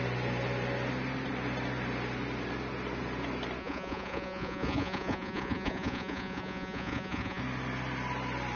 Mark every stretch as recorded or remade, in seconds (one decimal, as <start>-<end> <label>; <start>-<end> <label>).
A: 0.0-3.6 recorded; 3.6-7.4 remade; 7.4-8.6 recorded